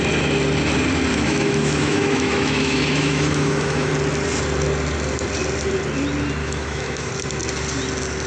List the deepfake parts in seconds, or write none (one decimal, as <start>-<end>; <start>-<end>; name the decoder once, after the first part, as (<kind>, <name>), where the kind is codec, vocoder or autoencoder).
1.1-3.9 (autoencoder, DAC-VAE); 6.4-7.1